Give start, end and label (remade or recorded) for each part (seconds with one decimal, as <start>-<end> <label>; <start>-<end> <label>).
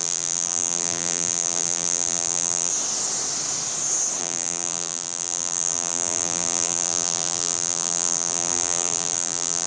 0.0-2.7 remade; 2.7-4.2 recorded; 4.2-9.7 remade